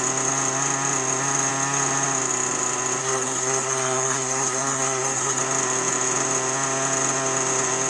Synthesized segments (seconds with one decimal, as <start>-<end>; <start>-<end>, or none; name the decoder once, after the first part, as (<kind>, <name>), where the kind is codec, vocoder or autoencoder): 3.0-5.4 (codec, SNAC)